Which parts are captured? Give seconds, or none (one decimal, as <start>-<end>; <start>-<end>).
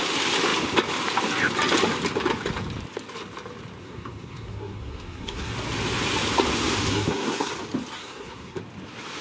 0.0-3.8; 5.5-6.9; 7.5-8.0; 8.6-9.2